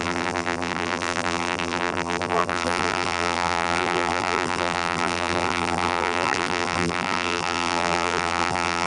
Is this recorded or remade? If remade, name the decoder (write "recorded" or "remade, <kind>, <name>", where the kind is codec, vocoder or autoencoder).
remade, vocoder, BigVGAN v2